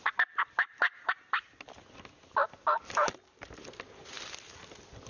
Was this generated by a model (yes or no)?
no